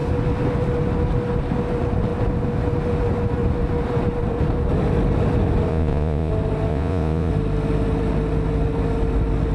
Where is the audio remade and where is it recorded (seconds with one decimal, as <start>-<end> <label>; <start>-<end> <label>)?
0.0-5.7 recorded; 5.7-6.3 remade; 6.3-6.7 recorded; 6.7-7.3 remade; 7.3-9.5 recorded